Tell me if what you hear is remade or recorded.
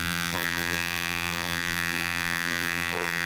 remade